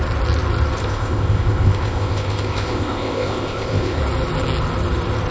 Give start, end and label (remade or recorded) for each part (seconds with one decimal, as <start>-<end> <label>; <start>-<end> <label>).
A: 0.0-0.8 recorded; 0.8-4.0 remade; 4.0-5.3 recorded